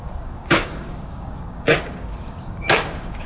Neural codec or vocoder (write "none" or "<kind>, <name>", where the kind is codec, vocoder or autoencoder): codec, DAC